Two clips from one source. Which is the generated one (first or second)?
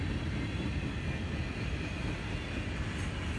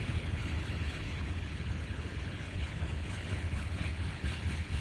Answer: second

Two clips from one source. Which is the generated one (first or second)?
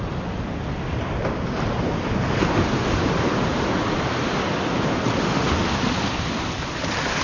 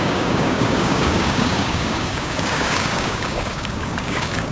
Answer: second